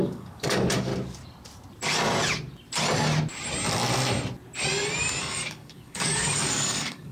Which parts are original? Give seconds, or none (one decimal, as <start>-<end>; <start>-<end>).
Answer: 0.9-5.2